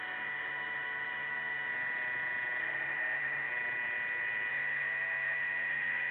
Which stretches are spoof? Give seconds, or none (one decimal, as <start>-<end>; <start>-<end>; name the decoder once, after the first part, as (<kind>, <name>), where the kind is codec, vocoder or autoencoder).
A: 0.0-1.7 (autoencoder, DAC-VAE); 2.6-3.5; 4.5-6.1